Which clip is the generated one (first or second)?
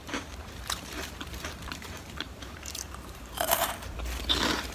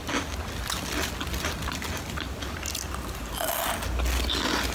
first